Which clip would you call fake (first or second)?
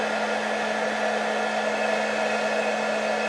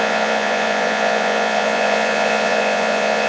second